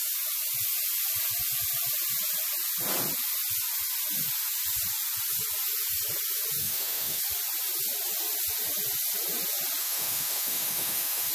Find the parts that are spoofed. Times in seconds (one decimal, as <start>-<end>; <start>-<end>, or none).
6.6-7.2; 9.8-11.3